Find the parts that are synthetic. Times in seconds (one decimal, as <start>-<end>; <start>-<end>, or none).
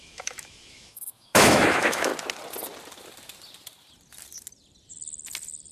0.0-2.1